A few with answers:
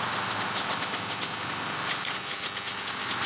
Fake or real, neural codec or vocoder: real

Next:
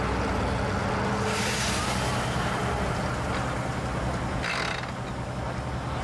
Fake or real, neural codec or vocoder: real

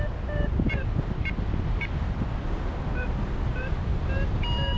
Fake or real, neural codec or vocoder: real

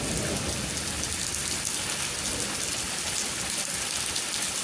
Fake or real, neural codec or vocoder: real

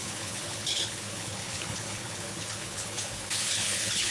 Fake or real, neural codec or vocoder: fake, codec, HILCodec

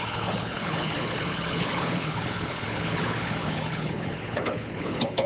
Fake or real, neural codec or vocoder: fake, codec, HILCodec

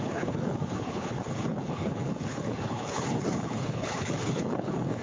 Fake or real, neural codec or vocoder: fake, codec, HILCodec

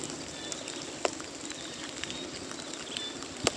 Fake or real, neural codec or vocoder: real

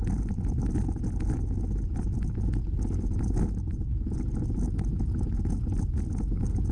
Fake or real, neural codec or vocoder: real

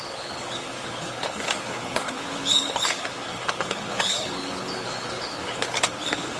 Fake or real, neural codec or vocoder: fake, codec, HILCodec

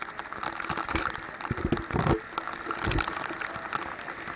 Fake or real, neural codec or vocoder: real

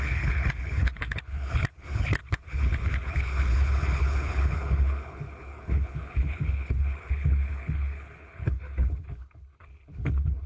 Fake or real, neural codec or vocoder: fake, codec, HILCodec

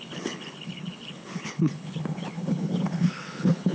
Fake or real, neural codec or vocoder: fake, codec, HILCodec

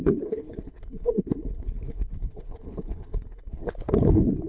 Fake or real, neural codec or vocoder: fake, codec, HILCodec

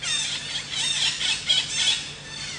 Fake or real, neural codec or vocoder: real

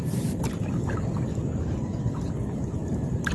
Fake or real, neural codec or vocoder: real